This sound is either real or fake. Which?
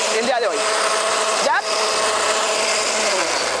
real